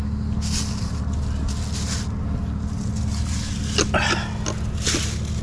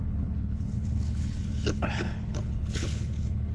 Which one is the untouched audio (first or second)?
first